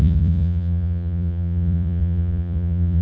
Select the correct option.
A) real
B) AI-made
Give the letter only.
B